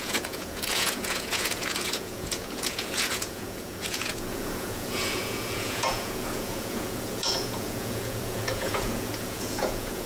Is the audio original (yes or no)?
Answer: no